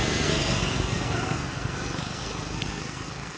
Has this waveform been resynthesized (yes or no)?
yes